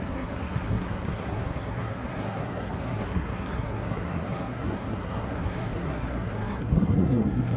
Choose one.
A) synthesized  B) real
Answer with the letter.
A